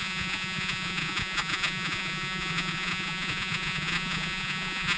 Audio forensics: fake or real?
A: fake